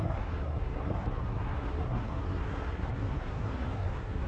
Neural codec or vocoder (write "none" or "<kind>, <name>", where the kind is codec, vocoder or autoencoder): codec, SNAC